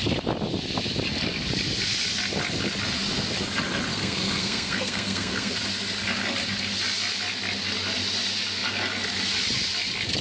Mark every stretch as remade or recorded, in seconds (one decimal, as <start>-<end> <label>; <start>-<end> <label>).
0.0-3.9 recorded; 3.9-5.6 remade; 5.6-10.2 recorded